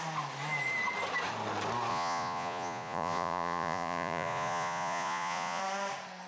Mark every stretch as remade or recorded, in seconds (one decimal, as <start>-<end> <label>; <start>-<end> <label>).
0.0-1.9 recorded; 1.9-5.6 remade; 5.6-6.3 recorded